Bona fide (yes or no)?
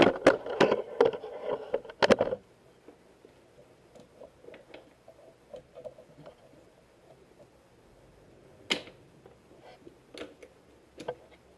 yes